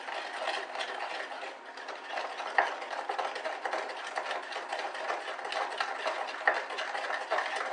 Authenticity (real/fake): real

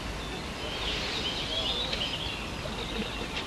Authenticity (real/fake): real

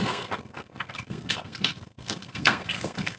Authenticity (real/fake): fake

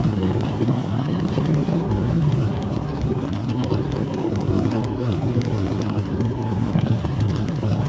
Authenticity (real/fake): fake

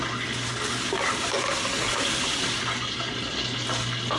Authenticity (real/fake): real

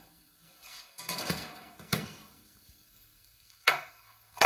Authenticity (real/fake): fake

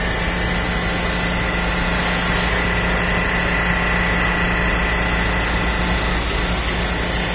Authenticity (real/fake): real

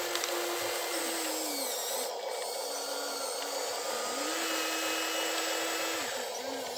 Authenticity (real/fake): real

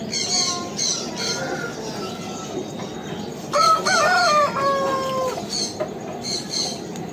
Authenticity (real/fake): real